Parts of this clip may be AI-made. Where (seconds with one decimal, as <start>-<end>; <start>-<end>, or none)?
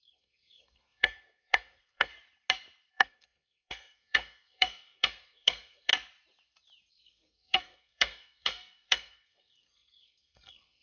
0.0-2.1; 2.9-5.9; 6.9-10.8